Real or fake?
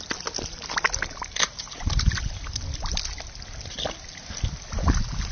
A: real